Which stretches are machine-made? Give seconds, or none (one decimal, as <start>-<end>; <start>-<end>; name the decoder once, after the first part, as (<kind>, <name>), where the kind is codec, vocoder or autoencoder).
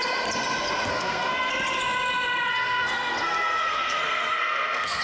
0.9-1.5 (codec, SNAC); 2.5-5.0